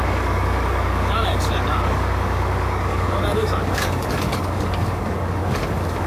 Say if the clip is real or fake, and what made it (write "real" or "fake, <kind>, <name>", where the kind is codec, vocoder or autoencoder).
fake, codec, DAC